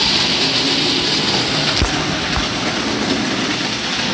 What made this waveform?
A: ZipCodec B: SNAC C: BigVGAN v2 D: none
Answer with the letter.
D